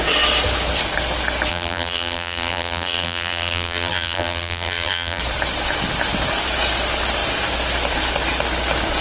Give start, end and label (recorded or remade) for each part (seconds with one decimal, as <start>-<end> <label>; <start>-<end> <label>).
0.0-1.5 recorded; 1.5-5.2 remade; 5.2-9.0 recorded